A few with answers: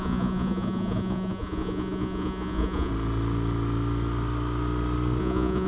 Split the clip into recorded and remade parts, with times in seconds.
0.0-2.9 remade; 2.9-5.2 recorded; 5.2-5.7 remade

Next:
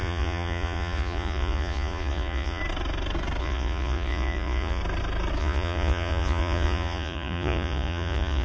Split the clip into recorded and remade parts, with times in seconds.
0.0-2.6 remade; 2.6-3.4 recorded; 3.4-4.8 remade; 4.8-5.4 recorded; 5.4-8.4 remade